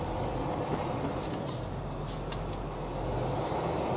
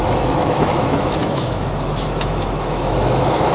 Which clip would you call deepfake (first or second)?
second